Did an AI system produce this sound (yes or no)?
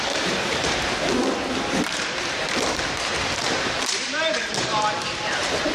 yes